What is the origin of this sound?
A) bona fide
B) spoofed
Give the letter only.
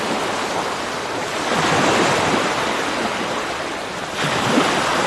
A